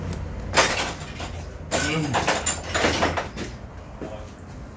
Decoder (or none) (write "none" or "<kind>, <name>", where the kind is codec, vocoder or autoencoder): none